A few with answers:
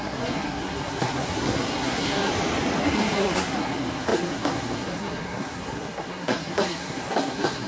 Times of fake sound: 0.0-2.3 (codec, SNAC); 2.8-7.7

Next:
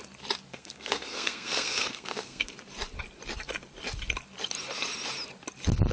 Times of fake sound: 0.5-2.5 (codec, SNAC)

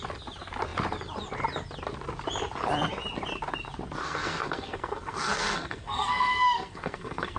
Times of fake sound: 4.0-7.4 (codec, SNAC)

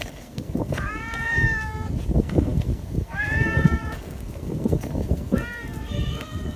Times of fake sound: 0.0-6.6 (codec, SNAC)

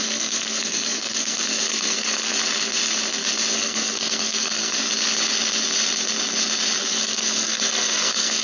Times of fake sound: 0.0-2.3 (codec, SNAC); 3.5-4.9; 6.8-8.4